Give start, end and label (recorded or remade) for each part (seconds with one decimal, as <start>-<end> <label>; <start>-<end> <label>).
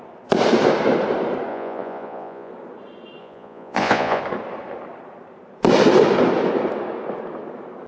0.0-1.5 recorded; 1.5-2.5 remade; 2.5-3.2 recorded; 3.2-4.2 remade; 4.2-7.9 recorded